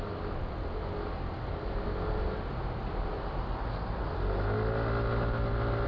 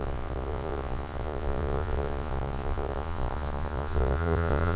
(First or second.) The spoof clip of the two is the second